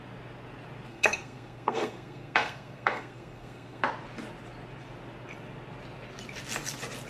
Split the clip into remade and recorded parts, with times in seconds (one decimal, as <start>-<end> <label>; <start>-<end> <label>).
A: 0.0-0.9 recorded; 0.9-3.8 remade; 3.8-7.1 recorded